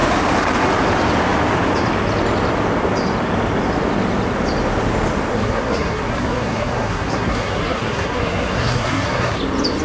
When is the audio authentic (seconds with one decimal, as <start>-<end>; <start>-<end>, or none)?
0.0-5.3; 9.4-9.8

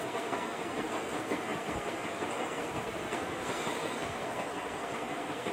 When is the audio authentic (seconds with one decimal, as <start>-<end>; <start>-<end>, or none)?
none

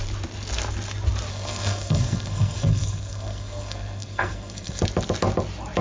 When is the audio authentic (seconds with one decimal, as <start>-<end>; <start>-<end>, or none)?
0.0-1.3; 4.8-5.8